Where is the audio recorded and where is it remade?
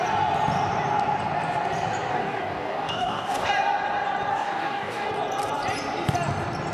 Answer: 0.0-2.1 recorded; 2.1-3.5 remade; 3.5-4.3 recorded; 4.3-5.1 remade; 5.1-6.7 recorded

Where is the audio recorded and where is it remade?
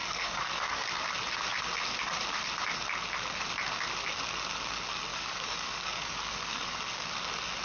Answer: 0.0-0.9 remade; 0.9-5.1 recorded; 5.1-7.1 remade; 7.1-7.6 recorded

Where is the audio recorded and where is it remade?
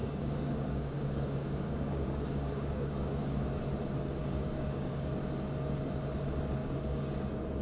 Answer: 0.0-3.6 remade; 3.6-4.2 recorded; 4.2-5.1 remade; 5.1-6.6 recorded; 6.6-7.1 remade; 7.1-7.6 recorded